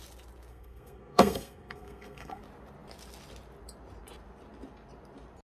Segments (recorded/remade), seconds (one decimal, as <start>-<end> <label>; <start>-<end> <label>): 0.0-0.5 recorded; 0.5-2.4 remade; 2.4-5.5 recorded